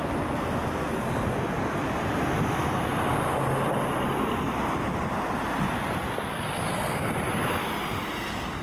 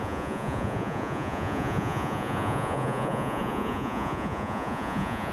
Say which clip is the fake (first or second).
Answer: second